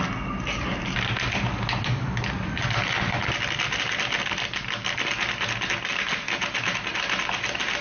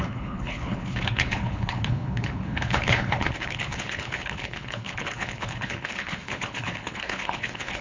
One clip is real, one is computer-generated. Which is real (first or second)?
first